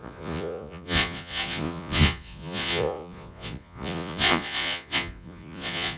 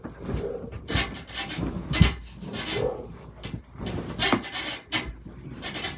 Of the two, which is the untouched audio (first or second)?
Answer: second